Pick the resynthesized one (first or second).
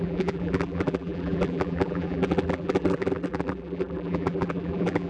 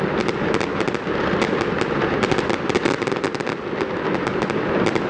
first